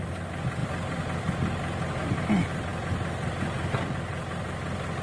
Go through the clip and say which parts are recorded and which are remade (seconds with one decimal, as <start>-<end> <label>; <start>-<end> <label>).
0.0-5.0 recorded